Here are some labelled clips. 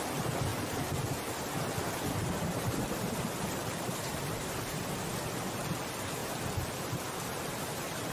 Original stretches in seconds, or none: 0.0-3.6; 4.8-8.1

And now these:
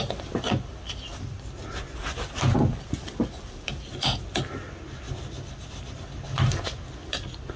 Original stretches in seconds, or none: 0.0-7.6

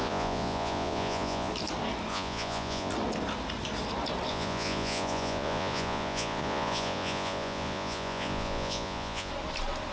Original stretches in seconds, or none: 1.5-2.1; 2.9-4.3; 9.3-9.9

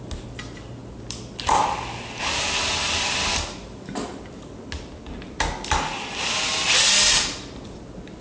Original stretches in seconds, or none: 0.0-8.2

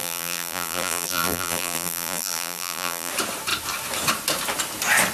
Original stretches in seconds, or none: 3.1-5.1

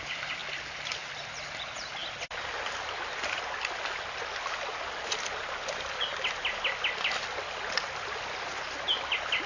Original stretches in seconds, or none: 0.0-9.5

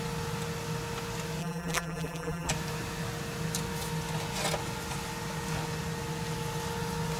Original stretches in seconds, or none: 0.0-1.4; 2.5-7.2